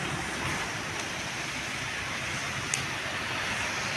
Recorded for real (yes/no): yes